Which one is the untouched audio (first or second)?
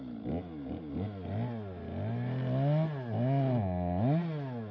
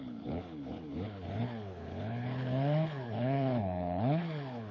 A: first